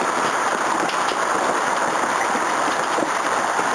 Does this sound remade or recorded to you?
recorded